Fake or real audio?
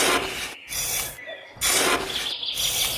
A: real